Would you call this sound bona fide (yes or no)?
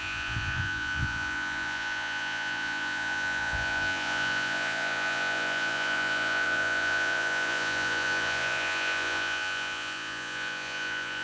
no